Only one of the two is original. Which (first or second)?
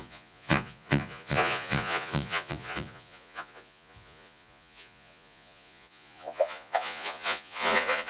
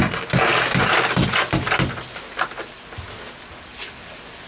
second